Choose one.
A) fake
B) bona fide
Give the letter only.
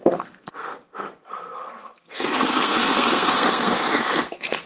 A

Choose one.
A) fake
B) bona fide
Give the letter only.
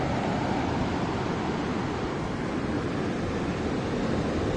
B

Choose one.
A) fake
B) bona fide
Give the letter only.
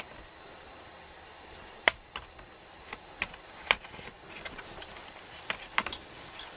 B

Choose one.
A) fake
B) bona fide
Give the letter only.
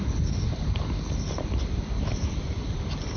B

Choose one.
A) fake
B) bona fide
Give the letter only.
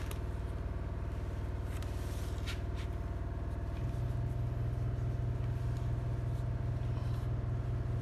B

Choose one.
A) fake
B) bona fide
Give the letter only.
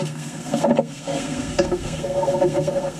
A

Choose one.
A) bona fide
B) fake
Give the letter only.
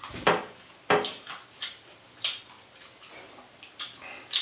A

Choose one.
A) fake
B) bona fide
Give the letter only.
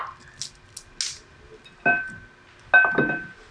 B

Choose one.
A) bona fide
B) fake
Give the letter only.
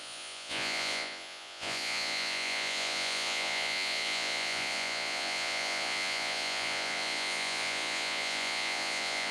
B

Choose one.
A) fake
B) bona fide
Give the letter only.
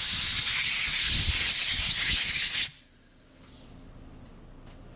B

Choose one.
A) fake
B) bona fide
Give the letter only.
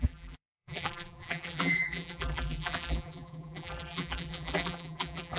A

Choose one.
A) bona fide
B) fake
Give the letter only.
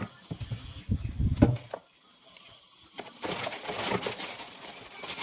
A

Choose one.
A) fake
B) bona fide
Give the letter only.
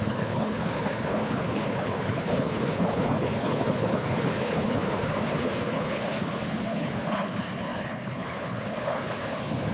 A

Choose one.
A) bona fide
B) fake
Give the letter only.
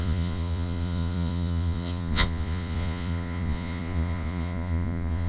B